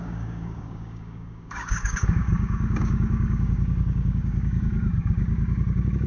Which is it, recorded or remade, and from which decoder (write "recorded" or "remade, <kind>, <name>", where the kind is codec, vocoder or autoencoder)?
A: remade, codec, DAC